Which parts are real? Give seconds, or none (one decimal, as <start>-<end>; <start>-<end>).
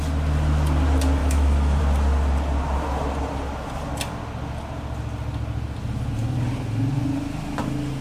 0.0-1.2; 1.8-8.0